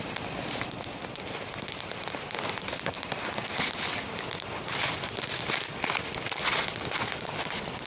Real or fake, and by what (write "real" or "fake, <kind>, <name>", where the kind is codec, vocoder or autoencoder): real